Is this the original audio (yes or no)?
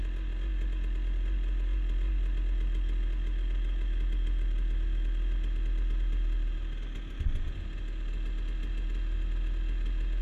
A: yes